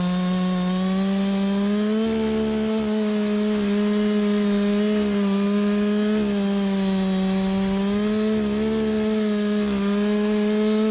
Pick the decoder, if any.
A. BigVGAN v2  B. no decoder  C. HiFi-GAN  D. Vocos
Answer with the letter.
B